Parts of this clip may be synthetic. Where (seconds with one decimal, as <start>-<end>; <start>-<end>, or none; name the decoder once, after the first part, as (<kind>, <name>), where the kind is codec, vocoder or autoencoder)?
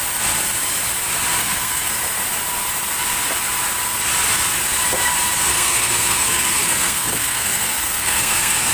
1.4-1.9 (codec, SNAC); 5.5-8.7